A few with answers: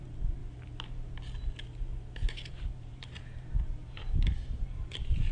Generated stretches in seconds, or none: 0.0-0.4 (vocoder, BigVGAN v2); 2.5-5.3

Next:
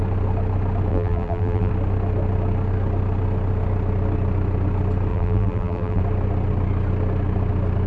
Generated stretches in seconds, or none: 0.9-1.7 (vocoder, BigVGAN v2); 5.1-6.0

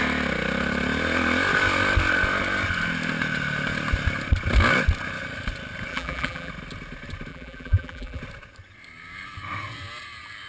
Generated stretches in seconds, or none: 5.9-6.5 (vocoder, BigVGAN v2); 7.3-8.2

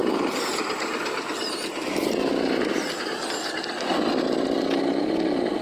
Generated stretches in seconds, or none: 0.0-3.2 (vocoder, BigVGAN v2)

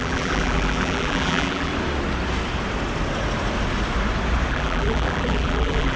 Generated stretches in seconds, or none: 0.0-1.7 (vocoder, BigVGAN v2); 4.5-6.0

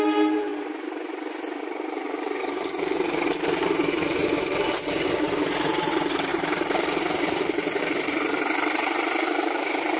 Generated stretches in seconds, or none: 0.0-0.5 (vocoder, BigVGAN v2); 1.6-10.0